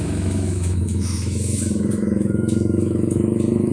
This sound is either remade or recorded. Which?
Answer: remade